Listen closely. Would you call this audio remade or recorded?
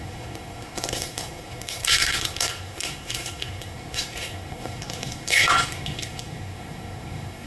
remade